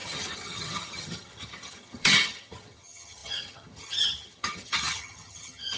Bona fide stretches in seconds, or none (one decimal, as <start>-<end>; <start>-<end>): none